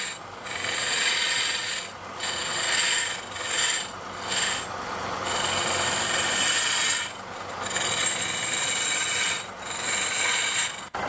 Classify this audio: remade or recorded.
recorded